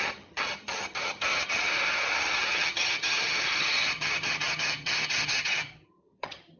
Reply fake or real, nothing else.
fake